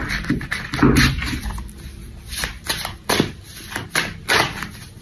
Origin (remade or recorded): recorded